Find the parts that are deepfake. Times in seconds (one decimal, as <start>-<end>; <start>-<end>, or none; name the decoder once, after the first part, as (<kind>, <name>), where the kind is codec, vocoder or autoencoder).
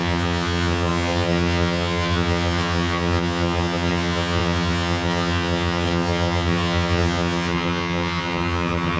0.0-9.0 (vocoder, HiFi-GAN)